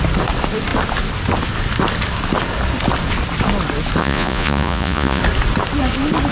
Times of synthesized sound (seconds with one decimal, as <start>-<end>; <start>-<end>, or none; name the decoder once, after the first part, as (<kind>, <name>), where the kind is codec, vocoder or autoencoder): 4.0-5.2 (vocoder, Vocos)